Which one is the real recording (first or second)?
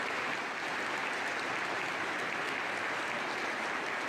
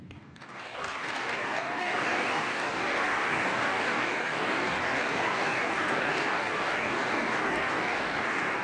first